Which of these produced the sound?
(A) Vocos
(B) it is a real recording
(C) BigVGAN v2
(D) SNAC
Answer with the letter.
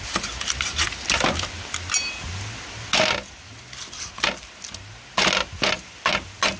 B